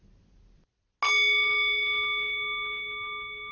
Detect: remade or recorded recorded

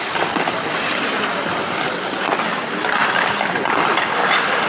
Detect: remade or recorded recorded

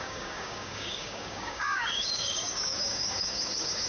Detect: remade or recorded remade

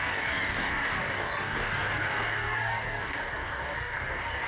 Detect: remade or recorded remade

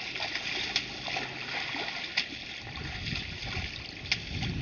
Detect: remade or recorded recorded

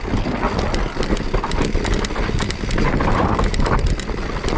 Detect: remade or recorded recorded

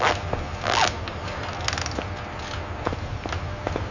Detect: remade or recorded recorded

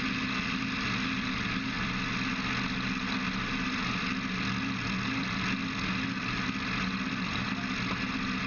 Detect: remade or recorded recorded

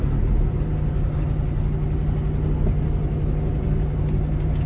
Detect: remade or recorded recorded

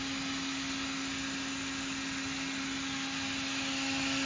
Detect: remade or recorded recorded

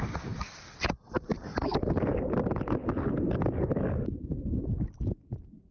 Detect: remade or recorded recorded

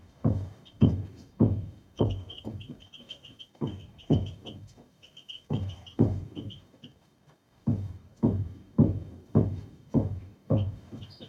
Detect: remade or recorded remade